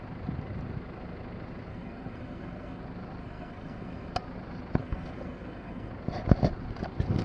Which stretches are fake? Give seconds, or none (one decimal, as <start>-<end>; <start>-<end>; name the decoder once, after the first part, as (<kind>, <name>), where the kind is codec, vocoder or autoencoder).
1.7-2.8 (codec, SNAC); 3.2-4.1; 4.8-5.9